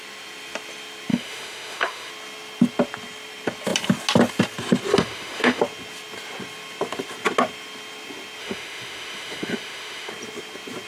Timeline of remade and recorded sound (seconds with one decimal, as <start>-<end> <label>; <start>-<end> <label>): 0.0-1.1 recorded; 1.1-2.1 remade; 2.1-4.9 recorded; 4.9-5.6 remade; 5.6-8.4 recorded; 8.4-10.1 remade; 10.1-10.9 recorded